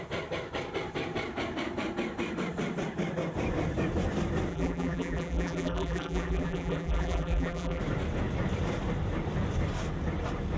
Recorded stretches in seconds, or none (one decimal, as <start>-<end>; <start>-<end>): 0.0-4.5; 7.8-10.6

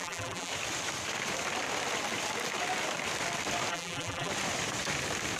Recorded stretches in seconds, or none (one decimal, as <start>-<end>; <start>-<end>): 0.5-3.7; 4.3-5.4

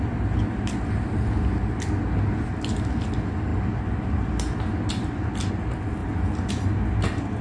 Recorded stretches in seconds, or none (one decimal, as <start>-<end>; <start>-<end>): 0.0-7.4

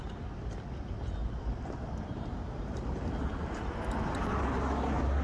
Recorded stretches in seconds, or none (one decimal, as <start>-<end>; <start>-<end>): 0.0-1.2; 4.3-5.2

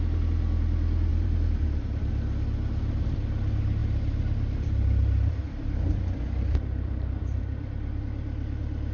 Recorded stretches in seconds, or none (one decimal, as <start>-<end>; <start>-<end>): 0.0-1.1; 2.1-3.8; 8.0-8.9

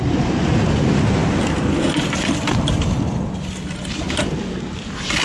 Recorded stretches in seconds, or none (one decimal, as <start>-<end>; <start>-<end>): 0.0-5.2

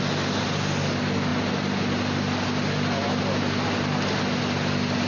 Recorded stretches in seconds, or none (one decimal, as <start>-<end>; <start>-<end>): 0.0-5.1

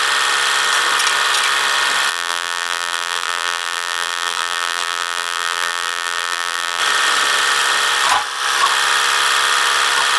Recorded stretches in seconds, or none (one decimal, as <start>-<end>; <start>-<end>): 0.0-2.1; 6.8-10.2